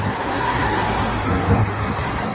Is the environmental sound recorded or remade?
remade